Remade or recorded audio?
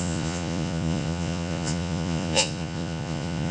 remade